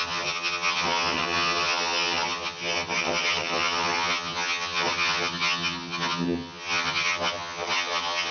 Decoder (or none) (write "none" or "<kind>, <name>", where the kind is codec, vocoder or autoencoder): vocoder, HiFi-GAN